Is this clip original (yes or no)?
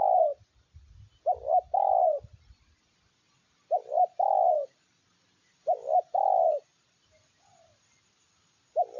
yes